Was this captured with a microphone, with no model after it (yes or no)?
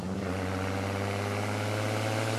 yes